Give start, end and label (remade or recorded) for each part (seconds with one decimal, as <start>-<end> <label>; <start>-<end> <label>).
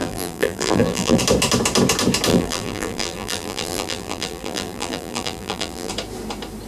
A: 0.0-1.2 remade; 1.2-2.3 recorded; 2.3-5.9 remade; 5.9-6.7 recorded